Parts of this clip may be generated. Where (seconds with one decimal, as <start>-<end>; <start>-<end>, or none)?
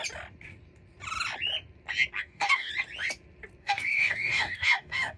2.2-2.7; 3.6-5.2